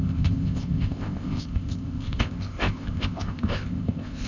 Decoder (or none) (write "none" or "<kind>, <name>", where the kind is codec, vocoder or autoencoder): codec, ZipCodec